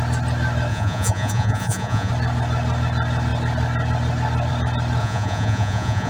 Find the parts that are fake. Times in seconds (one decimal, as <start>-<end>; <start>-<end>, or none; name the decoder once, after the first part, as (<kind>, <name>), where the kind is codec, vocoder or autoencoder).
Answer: 0.7-2.1 (vocoder, Vocos); 5.0-6.1